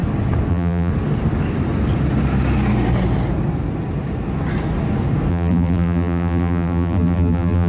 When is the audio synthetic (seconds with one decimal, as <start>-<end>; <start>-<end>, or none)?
0.5-0.9; 5.3-7.7